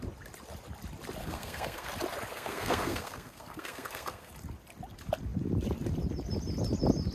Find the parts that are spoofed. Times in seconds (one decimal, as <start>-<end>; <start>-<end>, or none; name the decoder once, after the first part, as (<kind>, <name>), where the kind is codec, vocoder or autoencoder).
1.2-1.9 (codec, SNAC); 2.3-4.3